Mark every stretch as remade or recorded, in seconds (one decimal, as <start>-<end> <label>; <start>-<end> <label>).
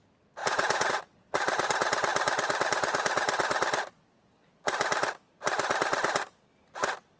0.0-0.4 recorded; 0.4-0.9 remade; 0.9-7.2 recorded